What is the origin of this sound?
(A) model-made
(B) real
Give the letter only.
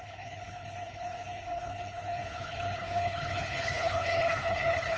A